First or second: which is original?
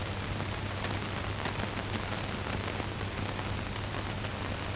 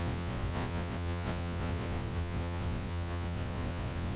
first